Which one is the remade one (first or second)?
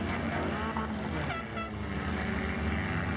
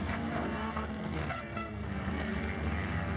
second